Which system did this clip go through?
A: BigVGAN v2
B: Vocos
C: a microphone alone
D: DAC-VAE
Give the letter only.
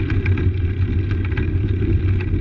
C